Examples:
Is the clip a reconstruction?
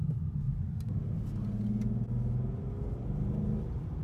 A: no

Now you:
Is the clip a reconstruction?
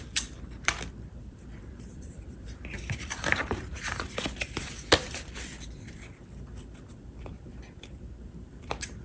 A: yes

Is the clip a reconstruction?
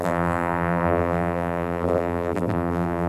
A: yes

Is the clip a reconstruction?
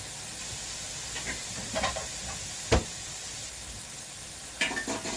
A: no